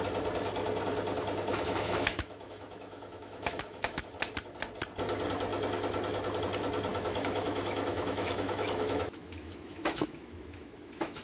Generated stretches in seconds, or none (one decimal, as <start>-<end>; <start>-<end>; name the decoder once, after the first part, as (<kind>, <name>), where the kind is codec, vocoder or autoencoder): 1.5-4.0 (autoencoder, DAC-VAE); 6.9-11.2